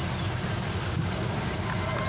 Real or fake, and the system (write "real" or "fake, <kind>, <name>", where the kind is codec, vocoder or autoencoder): real